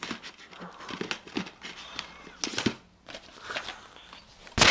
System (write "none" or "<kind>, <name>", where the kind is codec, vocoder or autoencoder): none